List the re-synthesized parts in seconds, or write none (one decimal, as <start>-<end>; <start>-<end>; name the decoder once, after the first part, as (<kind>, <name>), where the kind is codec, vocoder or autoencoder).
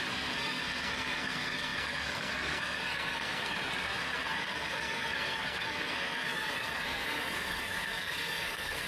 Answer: 0.0-8.9 (codec, SNAC)